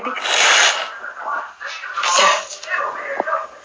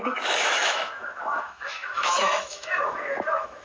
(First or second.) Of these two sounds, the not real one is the second